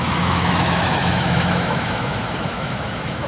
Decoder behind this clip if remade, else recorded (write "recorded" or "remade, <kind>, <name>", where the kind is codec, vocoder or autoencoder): remade, autoencoder, DAC-VAE